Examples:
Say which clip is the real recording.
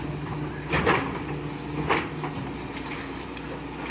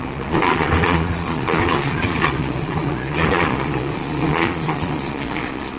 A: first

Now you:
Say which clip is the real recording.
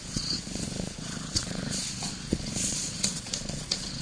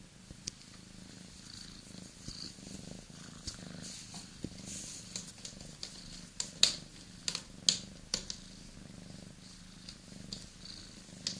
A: second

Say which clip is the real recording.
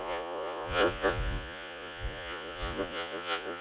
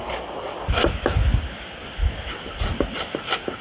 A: second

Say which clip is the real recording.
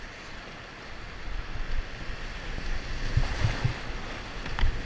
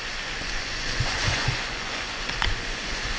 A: first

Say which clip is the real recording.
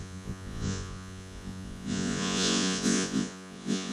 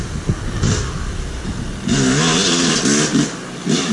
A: second